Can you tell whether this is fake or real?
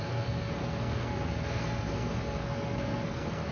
fake